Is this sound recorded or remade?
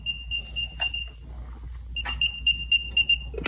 recorded